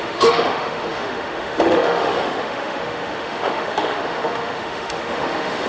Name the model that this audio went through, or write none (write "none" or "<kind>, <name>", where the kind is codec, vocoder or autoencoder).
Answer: autoencoder, DAC-VAE